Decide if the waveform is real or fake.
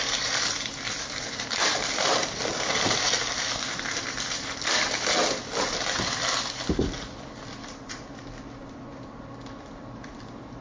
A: fake